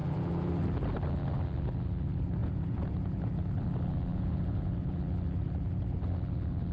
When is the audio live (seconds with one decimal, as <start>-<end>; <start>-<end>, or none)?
0.5-2.4; 3.3-4.1; 5.0-6.7